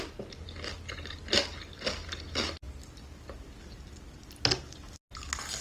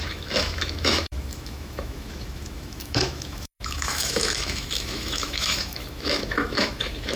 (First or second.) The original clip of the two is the first